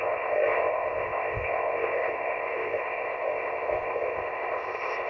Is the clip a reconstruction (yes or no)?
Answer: yes